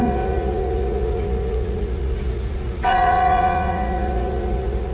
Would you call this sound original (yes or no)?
no